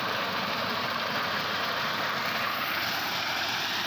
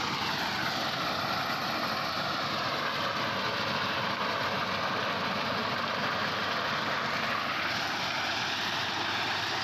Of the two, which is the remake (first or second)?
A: first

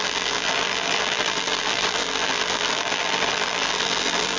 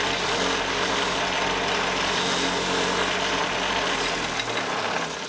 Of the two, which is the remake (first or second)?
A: first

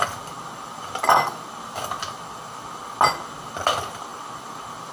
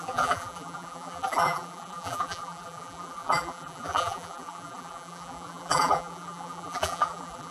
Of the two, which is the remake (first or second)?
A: second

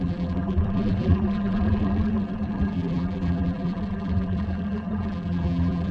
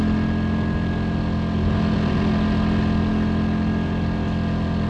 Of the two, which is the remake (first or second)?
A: first